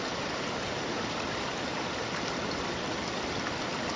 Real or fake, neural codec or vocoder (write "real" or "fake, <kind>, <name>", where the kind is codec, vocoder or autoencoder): fake, vocoder, BigVGAN v2